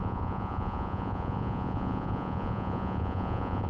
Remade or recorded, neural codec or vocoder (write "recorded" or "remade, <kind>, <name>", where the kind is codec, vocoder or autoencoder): remade, vocoder, Vocos